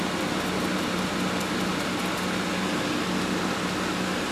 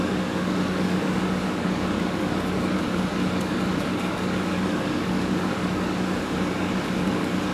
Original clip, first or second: first